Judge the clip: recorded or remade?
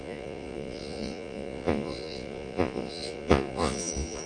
remade